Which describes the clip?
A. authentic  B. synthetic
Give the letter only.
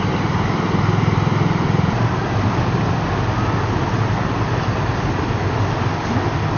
A